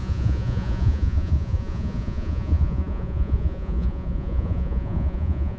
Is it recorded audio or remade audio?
remade